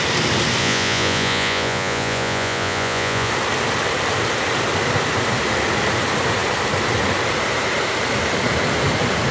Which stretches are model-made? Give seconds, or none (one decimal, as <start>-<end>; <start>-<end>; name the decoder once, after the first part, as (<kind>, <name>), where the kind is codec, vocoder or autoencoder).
0.6-3.3 (vocoder, Vocos)